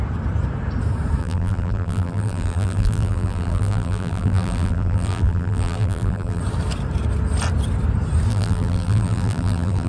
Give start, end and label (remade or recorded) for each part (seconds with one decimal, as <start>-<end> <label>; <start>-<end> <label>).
0.0-1.2 recorded; 1.2-6.4 remade; 6.4-8.3 recorded; 8.3-9.9 remade

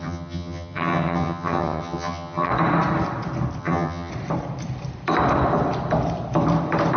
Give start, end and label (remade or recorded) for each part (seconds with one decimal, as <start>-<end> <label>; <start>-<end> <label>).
0.0-2.5 remade; 2.5-3.6 recorded; 3.6-4.1 remade; 4.1-7.0 recorded

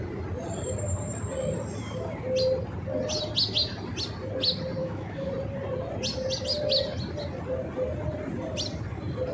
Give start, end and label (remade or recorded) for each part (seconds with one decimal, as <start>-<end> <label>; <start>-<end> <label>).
0.0-4.8 recorded; 4.8-5.3 remade; 5.3-9.3 recorded